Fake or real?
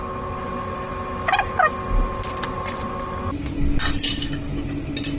real